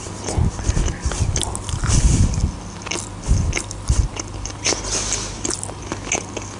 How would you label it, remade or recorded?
recorded